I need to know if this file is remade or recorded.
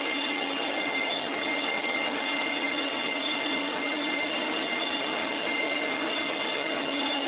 remade